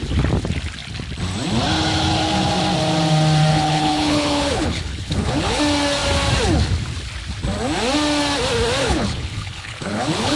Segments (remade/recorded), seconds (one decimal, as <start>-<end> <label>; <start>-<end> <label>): 0.0-3.5 recorded; 3.5-5.6 remade; 5.6-8.8 recorded; 8.8-10.4 remade